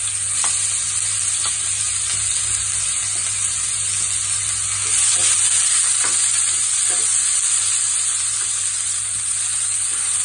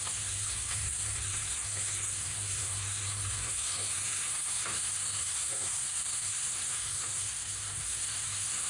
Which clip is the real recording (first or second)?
first